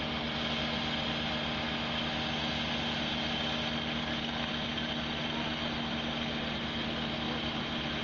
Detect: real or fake real